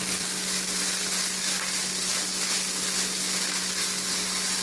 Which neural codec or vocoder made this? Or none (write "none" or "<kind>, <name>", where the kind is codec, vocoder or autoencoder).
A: none